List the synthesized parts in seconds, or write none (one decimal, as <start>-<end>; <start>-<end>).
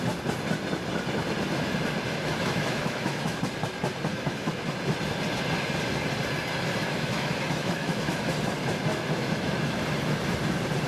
2.1-3.4; 4.1-4.7; 6.8-8.3; 8.9-9.8